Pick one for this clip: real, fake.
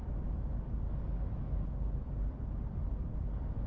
real